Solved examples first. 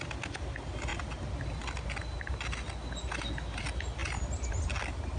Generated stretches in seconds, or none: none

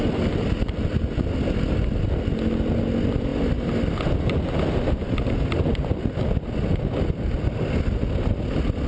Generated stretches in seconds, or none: none

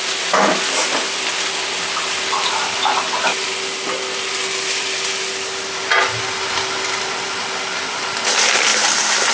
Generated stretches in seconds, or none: none

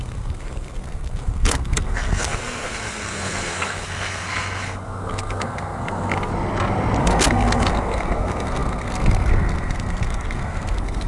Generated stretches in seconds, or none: 0.0-6.3 (codec, SNAC); 7.0-11.1

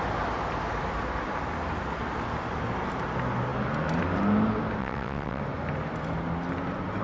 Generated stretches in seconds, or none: 4.8-5.4 (vocoder, WaveNeXt)